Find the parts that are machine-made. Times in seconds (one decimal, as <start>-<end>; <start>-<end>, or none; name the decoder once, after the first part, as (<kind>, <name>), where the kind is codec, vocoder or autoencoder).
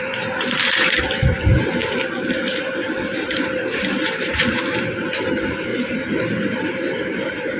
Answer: 0.0-5.7 (vocoder, BigVGAN v2); 6.3-7.6